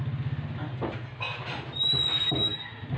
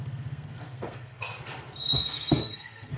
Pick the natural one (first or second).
first